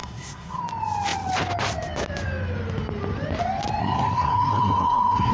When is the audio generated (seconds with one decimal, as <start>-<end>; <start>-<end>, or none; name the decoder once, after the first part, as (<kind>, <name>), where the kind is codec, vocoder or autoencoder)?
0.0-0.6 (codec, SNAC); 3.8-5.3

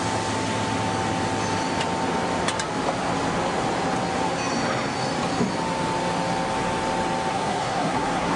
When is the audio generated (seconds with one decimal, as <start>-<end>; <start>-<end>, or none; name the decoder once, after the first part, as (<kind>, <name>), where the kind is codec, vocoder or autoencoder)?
7.3-8.4 (codec, SNAC)

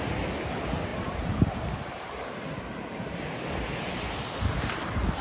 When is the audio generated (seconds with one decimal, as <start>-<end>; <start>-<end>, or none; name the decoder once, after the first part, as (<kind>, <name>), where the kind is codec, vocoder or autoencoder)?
0.9-4.0 (vocoder, BigVGAN v2)

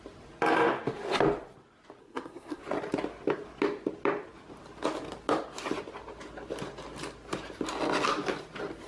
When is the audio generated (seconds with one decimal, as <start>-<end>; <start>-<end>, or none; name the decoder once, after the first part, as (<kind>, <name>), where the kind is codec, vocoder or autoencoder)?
2.0-2.6 (codec, SNAC)

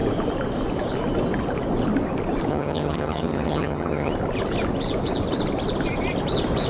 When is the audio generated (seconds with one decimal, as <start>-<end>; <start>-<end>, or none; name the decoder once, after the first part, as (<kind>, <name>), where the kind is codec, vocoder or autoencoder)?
2.5-4.1 (vocoder, HiFi-GAN)

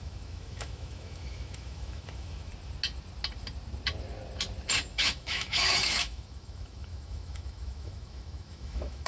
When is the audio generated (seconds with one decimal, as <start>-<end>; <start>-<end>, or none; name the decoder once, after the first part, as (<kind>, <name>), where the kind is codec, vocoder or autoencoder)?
0.0-2.5 (autoencoder, DAC-VAE); 4.9-9.1

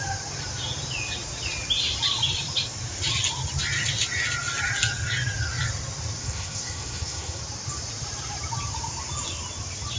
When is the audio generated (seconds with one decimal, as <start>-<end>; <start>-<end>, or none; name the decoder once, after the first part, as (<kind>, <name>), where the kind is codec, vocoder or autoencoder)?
6.2-7.4 (codec, SNAC)

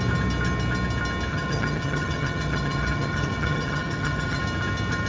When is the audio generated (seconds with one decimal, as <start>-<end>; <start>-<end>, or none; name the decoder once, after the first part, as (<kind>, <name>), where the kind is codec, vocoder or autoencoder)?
1.3-4.4 (vocoder, HiFi-GAN)